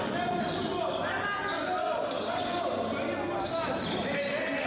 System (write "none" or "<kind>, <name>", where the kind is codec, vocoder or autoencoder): none